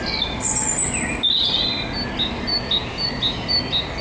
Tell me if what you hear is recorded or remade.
recorded